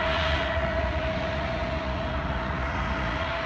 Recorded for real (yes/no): no